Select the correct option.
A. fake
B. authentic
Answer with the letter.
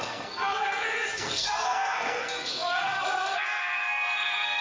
A